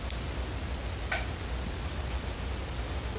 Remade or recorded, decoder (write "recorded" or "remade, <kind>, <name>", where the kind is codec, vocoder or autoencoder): recorded